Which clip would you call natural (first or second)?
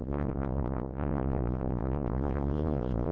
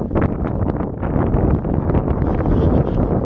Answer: second